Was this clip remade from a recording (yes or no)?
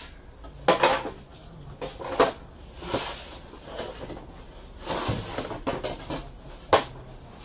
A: no